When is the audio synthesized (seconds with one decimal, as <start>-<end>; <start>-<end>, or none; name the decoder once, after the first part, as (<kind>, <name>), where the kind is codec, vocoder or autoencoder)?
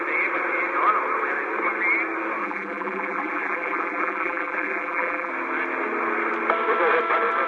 2.4-5.3 (vocoder, BigVGAN v2)